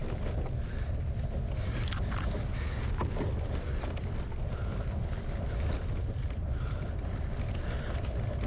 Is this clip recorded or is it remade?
recorded